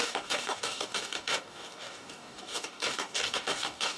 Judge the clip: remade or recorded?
remade